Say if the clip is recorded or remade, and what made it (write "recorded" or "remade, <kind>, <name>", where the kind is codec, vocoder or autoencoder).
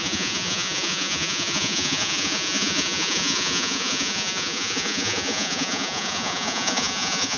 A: remade, vocoder, Vocos